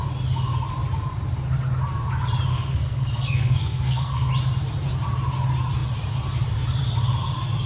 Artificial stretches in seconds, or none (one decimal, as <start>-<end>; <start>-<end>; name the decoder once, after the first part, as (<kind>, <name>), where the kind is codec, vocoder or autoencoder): 2.5-4.3 (codec, SNAC)